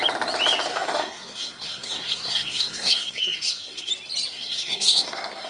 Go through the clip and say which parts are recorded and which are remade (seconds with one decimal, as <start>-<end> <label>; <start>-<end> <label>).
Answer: 0.0-0.7 recorded; 0.7-3.9 remade; 3.9-4.3 recorded; 4.3-5.5 remade